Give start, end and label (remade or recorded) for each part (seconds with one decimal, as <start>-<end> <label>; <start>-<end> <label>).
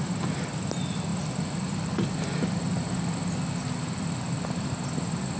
0.0-5.4 recorded